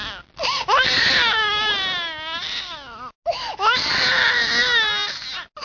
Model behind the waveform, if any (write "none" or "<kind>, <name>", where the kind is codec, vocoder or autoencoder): none